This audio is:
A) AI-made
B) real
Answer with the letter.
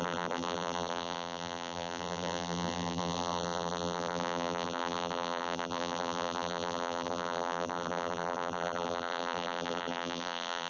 A